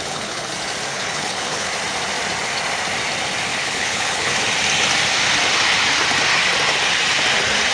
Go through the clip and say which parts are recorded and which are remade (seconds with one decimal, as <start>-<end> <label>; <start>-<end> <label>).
0.0-0.5 remade; 0.5-0.9 recorded; 0.9-1.7 remade; 1.7-3.5 recorded; 3.5-4.3 remade; 4.3-7.7 recorded